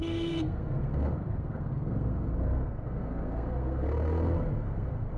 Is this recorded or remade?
remade